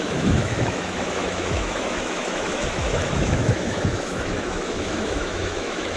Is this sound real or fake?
fake